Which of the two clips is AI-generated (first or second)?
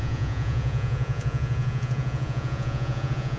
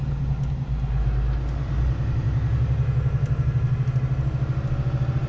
first